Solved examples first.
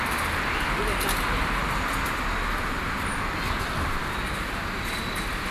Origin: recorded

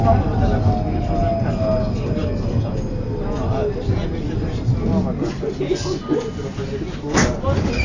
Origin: recorded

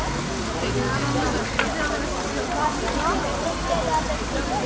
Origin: recorded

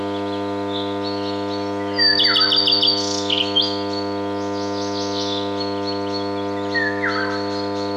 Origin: recorded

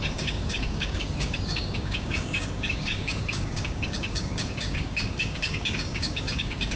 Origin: remade